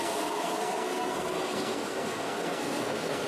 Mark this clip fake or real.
fake